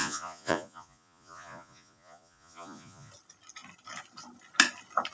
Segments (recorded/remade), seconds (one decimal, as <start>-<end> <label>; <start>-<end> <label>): 0.0-3.1 remade; 3.1-5.1 recorded